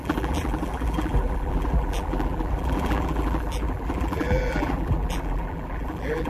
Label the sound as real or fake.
fake